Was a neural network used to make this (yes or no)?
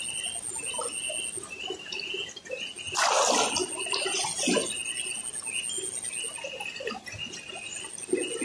no